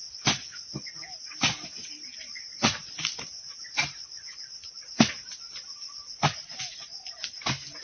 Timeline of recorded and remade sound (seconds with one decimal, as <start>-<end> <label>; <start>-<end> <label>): 0.0-4.7 remade; 4.7-5.7 recorded; 5.7-6.8 remade; 6.8-7.8 recorded